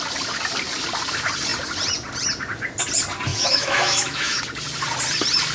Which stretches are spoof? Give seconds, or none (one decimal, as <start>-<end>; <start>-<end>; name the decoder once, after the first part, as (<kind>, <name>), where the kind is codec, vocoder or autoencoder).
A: 3.3-4.4 (autoencoder, DAC-VAE)